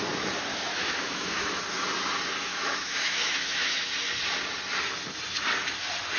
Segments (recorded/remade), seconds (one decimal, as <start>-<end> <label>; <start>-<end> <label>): 0.0-0.5 recorded; 0.5-1.6 remade; 1.6-2.4 recorded; 2.4-3.9 remade; 3.9-6.2 recorded